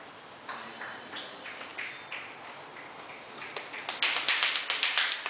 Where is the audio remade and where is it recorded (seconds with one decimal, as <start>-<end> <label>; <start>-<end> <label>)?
0.0-5.3 recorded